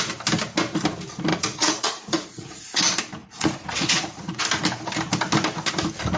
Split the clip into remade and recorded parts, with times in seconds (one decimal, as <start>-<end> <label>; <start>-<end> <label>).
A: 0.0-1.3 recorded; 1.3-2.8 remade; 2.8-3.2 recorded; 3.2-4.4 remade; 4.4-6.2 recorded